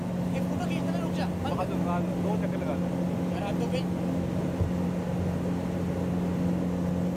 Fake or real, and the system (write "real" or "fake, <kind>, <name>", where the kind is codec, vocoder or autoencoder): real